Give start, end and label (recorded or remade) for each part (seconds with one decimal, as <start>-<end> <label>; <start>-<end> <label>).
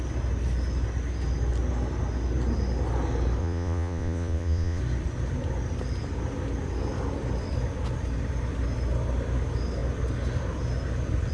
0.0-3.4 recorded; 3.4-4.8 remade; 4.8-11.3 recorded